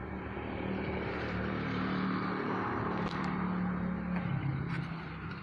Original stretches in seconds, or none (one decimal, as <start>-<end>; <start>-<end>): 3.2-5.4